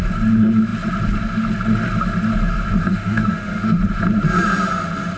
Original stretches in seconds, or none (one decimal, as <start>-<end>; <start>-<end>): 0.0-2.8; 3.8-5.2